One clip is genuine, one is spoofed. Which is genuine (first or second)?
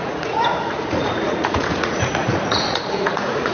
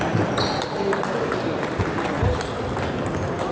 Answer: second